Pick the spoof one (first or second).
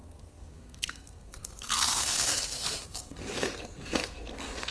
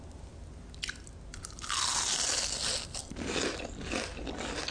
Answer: first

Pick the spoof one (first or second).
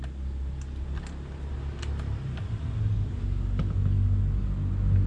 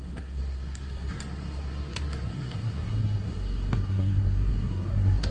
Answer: second